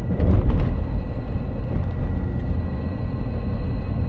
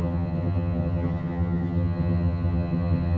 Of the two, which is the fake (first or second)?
second